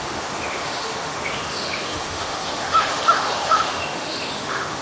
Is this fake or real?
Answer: fake